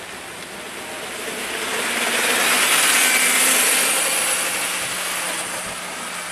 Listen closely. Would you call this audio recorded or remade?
recorded